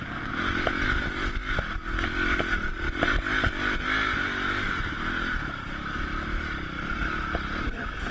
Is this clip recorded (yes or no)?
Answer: yes